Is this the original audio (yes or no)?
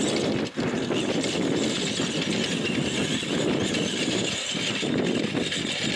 yes